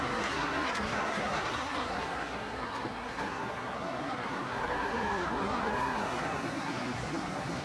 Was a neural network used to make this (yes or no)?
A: yes